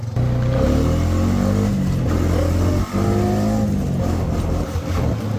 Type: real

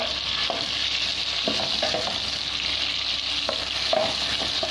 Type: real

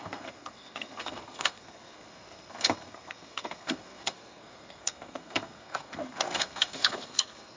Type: fake